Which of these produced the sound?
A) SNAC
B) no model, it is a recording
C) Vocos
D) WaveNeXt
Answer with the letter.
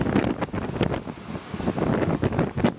B